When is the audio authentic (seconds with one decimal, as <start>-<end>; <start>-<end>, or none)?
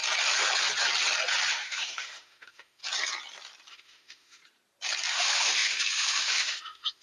0.0-1.5; 2.8-3.7; 4.4-5.1